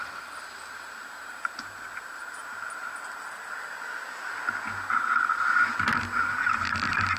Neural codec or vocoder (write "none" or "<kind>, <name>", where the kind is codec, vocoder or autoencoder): none